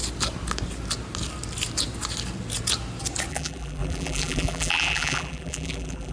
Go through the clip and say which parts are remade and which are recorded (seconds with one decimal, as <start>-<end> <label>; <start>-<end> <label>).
0.0-3.3 recorded; 3.3-6.1 remade